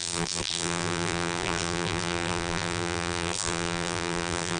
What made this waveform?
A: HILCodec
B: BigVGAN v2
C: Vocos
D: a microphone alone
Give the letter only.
B